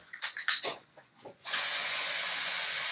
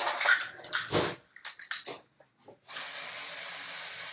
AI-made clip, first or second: first